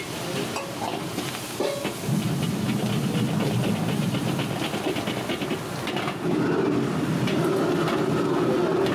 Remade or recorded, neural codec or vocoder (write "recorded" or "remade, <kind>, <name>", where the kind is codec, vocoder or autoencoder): recorded